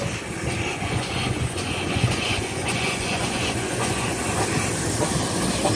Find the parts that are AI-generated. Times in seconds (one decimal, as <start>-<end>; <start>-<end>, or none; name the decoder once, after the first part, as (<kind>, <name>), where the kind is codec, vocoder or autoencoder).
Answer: 0.7-4.2 (vocoder, Vocos)